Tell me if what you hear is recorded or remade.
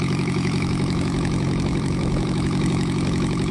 remade